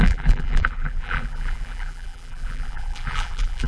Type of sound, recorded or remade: remade